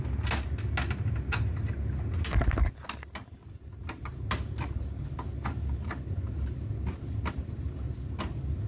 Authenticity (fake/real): real